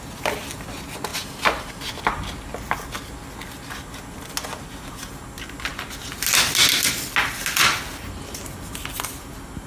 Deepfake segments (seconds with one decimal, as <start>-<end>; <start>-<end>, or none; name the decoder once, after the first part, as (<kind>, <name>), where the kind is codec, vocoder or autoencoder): none